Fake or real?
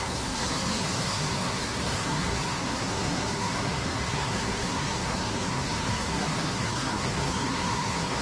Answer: fake